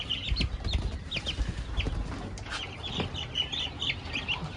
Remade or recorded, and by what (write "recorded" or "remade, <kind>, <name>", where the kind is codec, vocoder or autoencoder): recorded